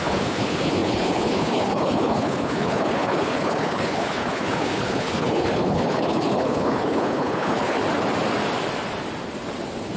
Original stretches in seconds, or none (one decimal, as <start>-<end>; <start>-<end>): 7.8-10.0